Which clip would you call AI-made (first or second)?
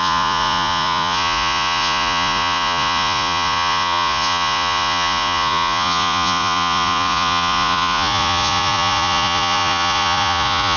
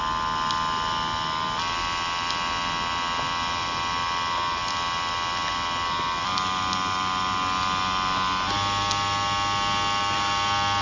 first